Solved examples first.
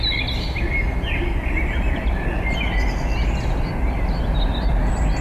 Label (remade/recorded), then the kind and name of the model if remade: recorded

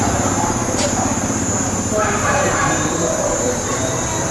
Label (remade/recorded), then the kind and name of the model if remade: recorded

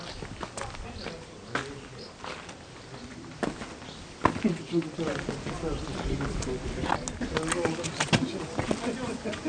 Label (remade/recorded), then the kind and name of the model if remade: recorded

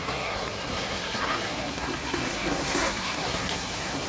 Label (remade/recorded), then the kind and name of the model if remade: remade, codec, SNAC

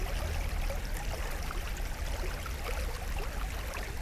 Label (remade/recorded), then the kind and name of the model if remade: recorded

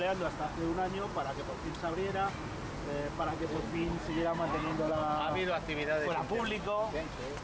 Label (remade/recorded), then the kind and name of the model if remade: recorded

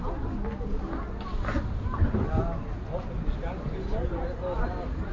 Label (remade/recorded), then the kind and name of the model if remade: recorded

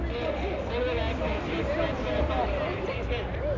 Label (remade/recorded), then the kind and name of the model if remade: recorded